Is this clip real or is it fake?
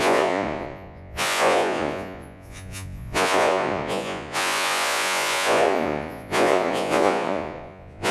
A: fake